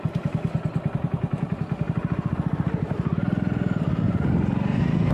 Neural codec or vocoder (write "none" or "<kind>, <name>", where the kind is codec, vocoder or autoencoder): vocoder, BigVGAN v2